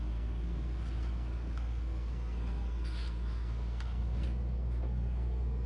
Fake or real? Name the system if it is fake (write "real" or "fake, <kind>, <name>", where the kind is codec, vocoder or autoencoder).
fake, codec, SNAC